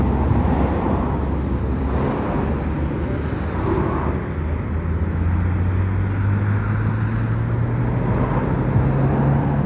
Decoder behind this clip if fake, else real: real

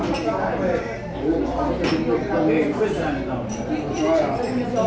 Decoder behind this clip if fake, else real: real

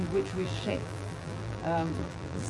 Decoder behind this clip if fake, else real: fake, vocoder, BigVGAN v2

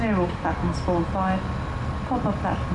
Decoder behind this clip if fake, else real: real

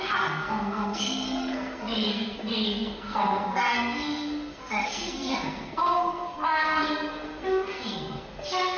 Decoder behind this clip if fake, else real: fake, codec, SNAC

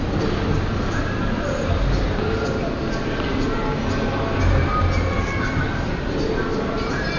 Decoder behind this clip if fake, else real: real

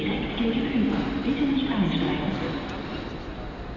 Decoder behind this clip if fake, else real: real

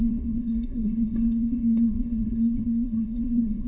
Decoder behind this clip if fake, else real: fake, codec, SNAC